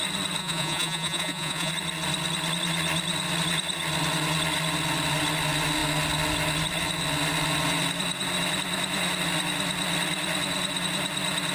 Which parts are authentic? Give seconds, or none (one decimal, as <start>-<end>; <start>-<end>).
0.0-0.4; 1.7-11.5